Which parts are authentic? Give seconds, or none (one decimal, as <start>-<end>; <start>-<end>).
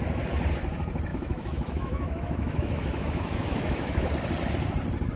0.0-1.1; 4.1-5.2